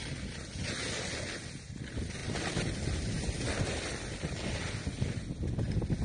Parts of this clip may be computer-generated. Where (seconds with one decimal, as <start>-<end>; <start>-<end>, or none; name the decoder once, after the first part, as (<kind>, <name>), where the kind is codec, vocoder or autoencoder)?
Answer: none